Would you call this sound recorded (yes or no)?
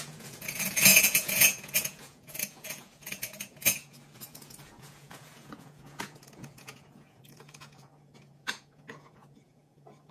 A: no